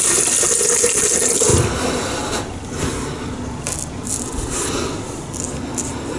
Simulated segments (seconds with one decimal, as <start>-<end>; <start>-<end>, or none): none